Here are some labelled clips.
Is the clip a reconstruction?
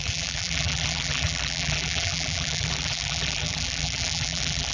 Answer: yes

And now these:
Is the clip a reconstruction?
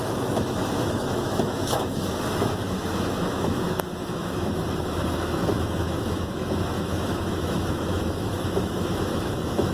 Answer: yes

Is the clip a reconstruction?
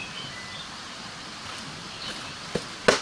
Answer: no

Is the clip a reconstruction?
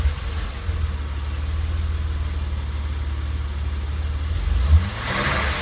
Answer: no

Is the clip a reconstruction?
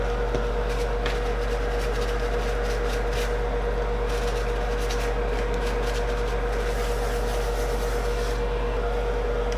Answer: no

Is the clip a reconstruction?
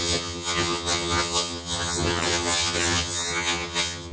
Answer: yes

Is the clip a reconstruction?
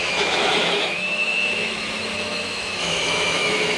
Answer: yes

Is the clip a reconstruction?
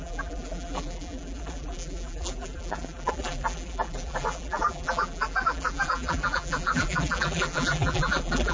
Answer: yes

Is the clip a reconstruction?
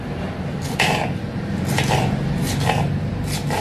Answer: no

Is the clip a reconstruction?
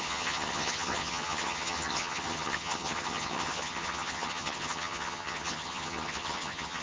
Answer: yes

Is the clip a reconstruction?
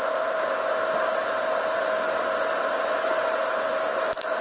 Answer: no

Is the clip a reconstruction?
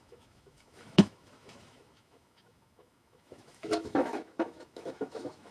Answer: yes